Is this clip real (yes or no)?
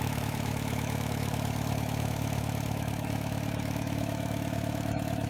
no